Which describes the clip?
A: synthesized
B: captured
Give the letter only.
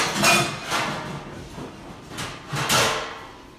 B